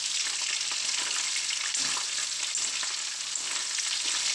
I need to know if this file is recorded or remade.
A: recorded